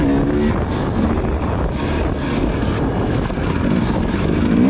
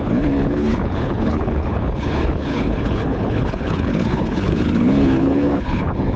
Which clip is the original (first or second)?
first